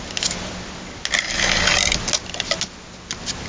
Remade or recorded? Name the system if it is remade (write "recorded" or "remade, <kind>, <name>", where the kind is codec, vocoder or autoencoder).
recorded